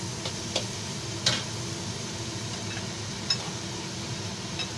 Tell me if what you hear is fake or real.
real